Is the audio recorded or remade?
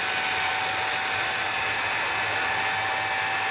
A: recorded